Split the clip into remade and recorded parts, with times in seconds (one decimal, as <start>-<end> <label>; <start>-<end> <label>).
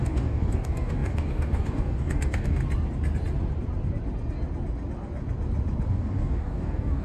0.0-2.6 remade; 2.6-5.9 recorded; 5.9-7.0 remade